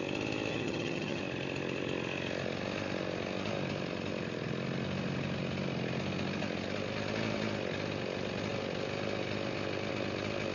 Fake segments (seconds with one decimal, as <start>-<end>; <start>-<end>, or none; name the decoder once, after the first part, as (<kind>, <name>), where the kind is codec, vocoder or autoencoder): 0.5-1.2 (vocoder, HiFi-GAN)